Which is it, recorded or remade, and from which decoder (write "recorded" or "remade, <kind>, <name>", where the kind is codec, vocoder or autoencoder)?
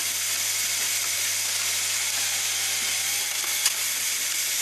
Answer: recorded